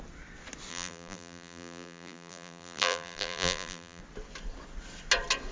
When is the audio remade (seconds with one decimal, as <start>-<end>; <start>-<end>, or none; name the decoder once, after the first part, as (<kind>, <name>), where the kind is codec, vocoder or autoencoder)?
0.7-4.0 (vocoder, BigVGAN v2)